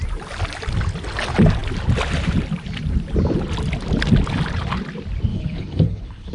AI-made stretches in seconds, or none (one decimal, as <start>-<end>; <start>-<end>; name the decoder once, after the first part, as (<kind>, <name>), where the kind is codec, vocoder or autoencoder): 5.3-6.3 (codec, HILCodec)